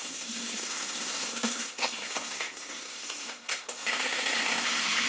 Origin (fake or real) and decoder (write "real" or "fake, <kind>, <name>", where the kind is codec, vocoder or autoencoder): fake, codec, SNAC